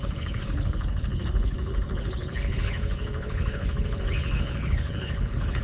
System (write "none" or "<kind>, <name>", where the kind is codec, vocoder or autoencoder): codec, HILCodec